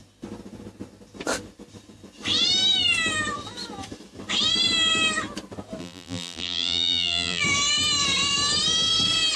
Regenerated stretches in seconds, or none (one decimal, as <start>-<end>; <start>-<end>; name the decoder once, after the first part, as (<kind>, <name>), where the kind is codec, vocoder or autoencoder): 5.8-7.4 (vocoder, BigVGAN v2)